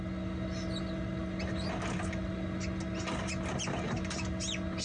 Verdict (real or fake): real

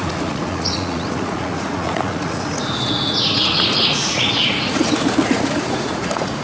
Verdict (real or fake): fake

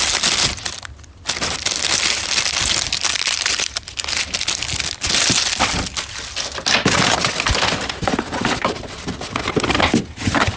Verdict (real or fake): real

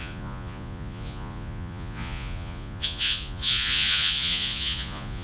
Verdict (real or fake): fake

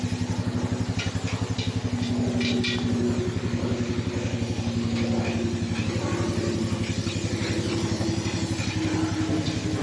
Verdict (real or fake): real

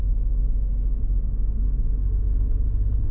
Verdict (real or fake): real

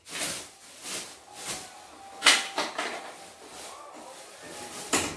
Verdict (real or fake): real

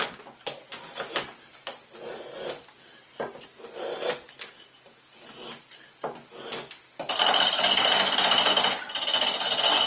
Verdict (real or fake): real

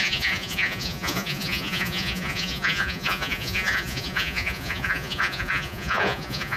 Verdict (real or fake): fake